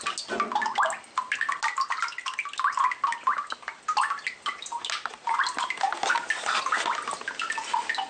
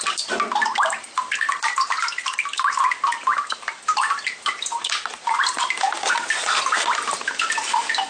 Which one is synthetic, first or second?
second